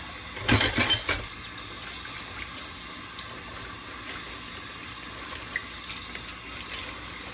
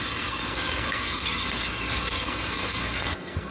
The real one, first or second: first